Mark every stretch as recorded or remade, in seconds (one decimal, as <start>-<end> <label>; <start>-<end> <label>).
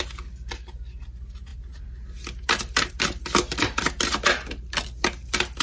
0.0-5.6 recorded